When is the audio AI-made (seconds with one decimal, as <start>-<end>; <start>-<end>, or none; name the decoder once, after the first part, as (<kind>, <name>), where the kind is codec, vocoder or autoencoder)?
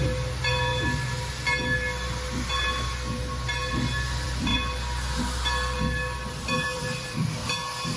0.0-0.7 (vocoder, BigVGAN v2); 3.7-4.5; 5.2-7.4